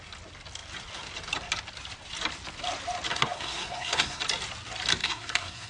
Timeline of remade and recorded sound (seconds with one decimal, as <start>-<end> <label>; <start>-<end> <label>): 0.0-3.1 recorded; 3.1-4.2 remade; 4.2-5.0 recorded; 5.0-5.7 remade